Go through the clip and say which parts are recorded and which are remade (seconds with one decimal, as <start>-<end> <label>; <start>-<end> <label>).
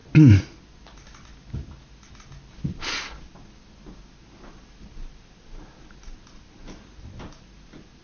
0.0-8.0 recorded